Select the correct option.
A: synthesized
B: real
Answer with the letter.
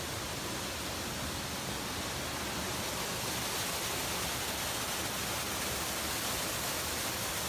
B